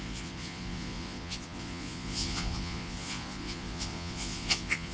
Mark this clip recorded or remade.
remade